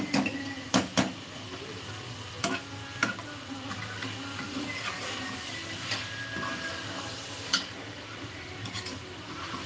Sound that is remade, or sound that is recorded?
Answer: recorded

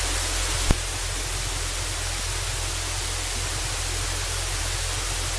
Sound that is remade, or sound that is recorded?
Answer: recorded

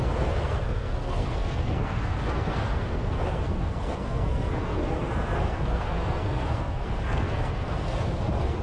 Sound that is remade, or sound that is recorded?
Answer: remade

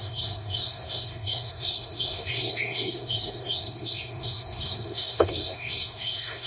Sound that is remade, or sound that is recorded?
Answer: remade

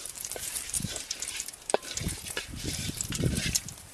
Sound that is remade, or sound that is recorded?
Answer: remade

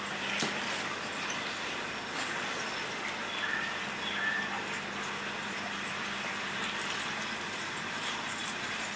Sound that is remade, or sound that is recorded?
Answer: recorded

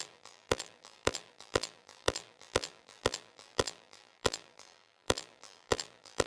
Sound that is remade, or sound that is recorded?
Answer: remade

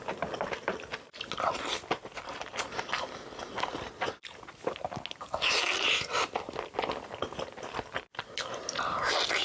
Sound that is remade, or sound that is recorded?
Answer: recorded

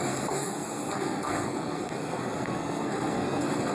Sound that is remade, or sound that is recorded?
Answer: remade